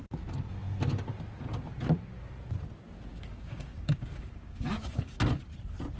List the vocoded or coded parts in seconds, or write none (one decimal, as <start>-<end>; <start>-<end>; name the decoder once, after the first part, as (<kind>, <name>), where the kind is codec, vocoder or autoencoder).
3.1-5.2 (codec, DAC)